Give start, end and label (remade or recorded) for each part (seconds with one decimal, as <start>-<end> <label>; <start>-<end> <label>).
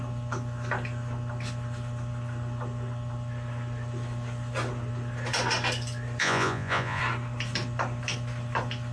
0.0-6.2 recorded; 6.2-7.0 remade; 7.0-8.9 recorded